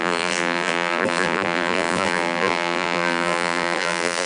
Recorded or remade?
remade